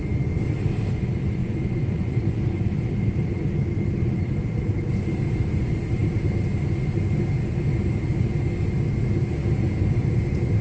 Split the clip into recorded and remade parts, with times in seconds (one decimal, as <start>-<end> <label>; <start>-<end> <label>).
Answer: 0.0-1.4 recorded; 1.4-2.7 remade; 2.7-10.6 recorded

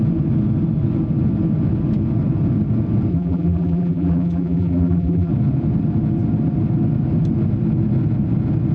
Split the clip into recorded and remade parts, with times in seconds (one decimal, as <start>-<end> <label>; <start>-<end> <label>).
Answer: 0.0-3.1 recorded; 3.1-5.3 remade; 5.3-8.7 recorded

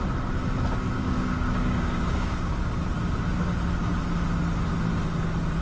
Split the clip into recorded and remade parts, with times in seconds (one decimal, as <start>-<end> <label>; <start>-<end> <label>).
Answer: 0.0-1.0 recorded; 1.0-2.7 remade; 2.7-5.6 recorded

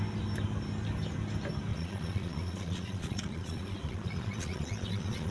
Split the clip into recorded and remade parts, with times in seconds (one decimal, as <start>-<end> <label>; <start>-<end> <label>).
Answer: 0.0-1.7 recorded; 1.7-5.3 remade